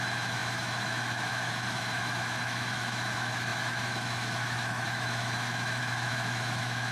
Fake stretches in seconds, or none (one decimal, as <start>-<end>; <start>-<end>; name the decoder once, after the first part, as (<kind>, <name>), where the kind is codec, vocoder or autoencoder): 0.0-6.9 (autoencoder, DAC-VAE)